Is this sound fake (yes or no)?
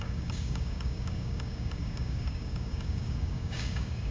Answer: yes